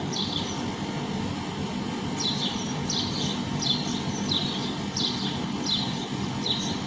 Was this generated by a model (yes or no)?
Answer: no